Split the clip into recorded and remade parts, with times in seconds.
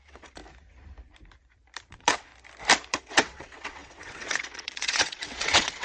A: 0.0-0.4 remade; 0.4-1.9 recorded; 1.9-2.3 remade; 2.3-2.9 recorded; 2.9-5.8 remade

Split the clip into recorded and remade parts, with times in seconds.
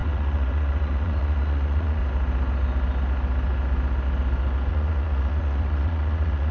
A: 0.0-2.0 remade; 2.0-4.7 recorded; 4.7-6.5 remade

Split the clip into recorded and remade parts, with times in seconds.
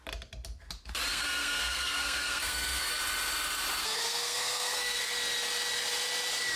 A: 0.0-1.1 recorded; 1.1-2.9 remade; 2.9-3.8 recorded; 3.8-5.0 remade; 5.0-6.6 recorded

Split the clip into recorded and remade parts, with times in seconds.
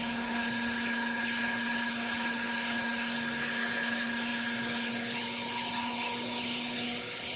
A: 0.0-7.4 remade